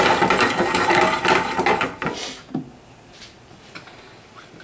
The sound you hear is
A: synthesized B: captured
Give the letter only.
B